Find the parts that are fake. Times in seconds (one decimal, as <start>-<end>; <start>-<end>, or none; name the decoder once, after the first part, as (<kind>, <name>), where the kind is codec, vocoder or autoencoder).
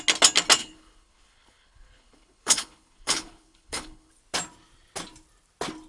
0.6-4.1 (codec, HILCodec)